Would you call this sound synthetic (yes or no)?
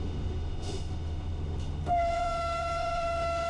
yes